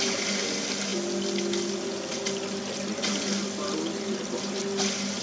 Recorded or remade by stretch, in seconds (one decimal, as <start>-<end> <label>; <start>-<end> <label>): 0.0-5.2 recorded

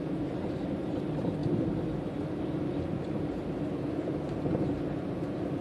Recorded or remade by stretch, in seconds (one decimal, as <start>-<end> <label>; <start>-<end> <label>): 0.0-5.6 recorded

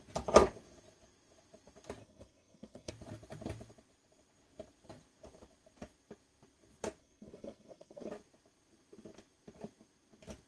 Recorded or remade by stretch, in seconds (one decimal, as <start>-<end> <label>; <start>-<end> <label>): 0.0-2.0 recorded; 2.0-2.9 remade; 2.9-7.0 recorded; 7.0-8.1 remade; 8.1-10.5 recorded

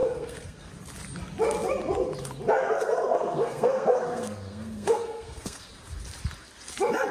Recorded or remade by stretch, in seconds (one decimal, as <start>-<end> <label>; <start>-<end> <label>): 0.0-0.7 remade; 0.7-2.6 recorded; 2.6-5.7 remade; 5.7-7.1 recorded

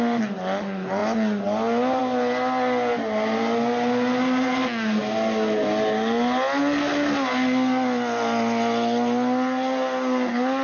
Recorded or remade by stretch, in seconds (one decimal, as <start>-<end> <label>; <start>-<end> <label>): 0.0-10.6 recorded

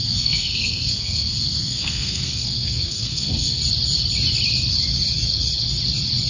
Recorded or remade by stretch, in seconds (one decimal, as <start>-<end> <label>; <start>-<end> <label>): 0.0-3.6 remade; 3.6-6.3 recorded

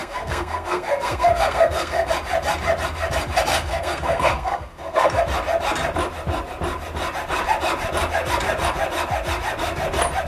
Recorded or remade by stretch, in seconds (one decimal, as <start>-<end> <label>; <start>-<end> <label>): 0.0-2.1 remade; 2.1-3.5 recorded; 3.5-5.2 remade; 5.2-10.3 recorded

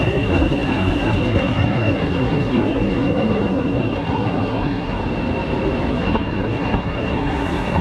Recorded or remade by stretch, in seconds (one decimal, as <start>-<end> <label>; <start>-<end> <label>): 0.0-5.0 remade; 5.0-5.9 recorded; 5.9-7.8 remade